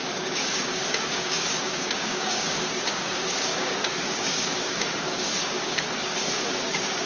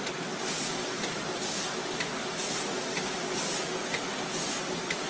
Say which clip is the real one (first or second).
second